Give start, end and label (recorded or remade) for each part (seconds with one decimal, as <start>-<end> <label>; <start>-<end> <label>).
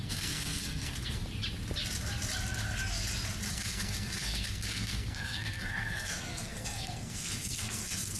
0.0-1.2 remade; 1.2-3.5 recorded; 3.5-8.2 remade